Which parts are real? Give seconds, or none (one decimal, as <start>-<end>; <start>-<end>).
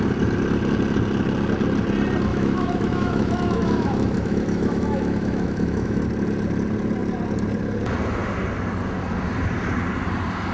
0.0-2.3; 6.0-10.5